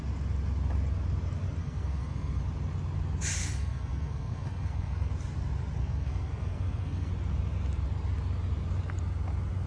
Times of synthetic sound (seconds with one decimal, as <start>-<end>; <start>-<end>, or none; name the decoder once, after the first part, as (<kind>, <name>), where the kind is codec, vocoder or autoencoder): 1.6-2.4 (codec, SNAC); 3.4-5.1; 5.8-7.1